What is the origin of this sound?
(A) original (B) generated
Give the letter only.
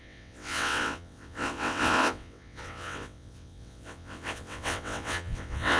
B